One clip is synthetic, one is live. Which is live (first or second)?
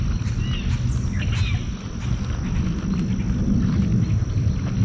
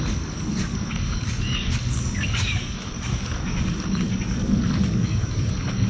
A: first